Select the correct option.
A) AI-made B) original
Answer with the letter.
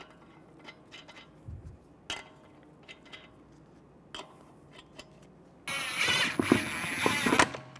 B